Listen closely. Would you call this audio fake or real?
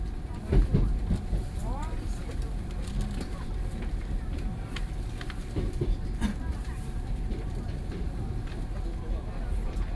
real